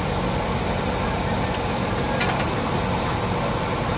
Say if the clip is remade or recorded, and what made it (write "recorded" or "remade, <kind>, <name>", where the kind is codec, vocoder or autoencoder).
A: recorded